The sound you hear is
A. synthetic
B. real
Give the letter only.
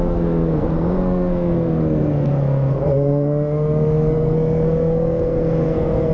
A